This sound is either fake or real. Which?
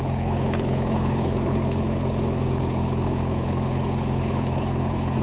fake